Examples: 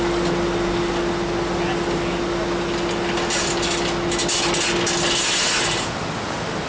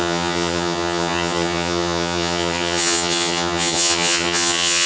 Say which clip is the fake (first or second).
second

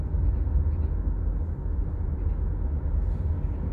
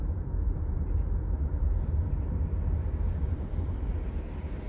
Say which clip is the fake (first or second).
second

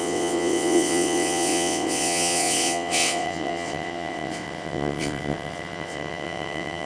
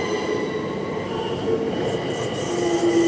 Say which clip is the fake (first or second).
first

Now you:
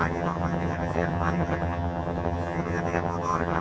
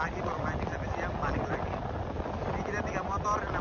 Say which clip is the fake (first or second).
first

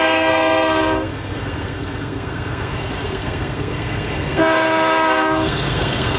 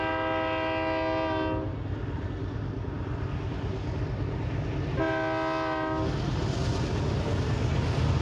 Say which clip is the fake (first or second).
first